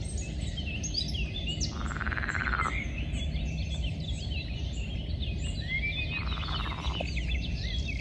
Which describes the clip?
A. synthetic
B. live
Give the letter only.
B